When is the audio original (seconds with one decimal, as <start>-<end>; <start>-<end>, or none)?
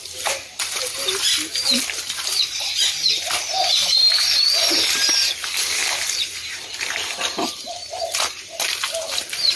5.8-6.7